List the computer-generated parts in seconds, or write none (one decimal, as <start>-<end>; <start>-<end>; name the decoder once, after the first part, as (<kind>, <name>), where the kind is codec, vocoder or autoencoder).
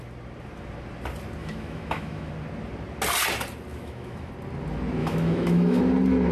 1.4-2.3 (autoencoder, DAC-VAE); 3.7-4.3; 5.0-5.8